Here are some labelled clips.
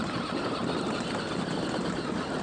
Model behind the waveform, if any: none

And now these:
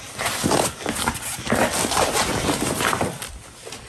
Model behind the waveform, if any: none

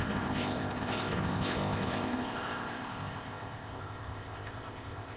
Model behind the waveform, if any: codec, ZipCodec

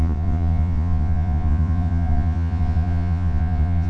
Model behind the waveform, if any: vocoder, Vocos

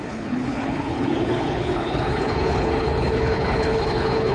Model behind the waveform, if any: codec, HILCodec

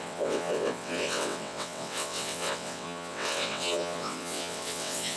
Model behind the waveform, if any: vocoder, WaveNeXt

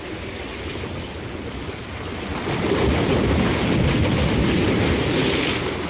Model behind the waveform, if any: none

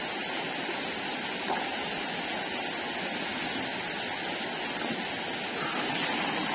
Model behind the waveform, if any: none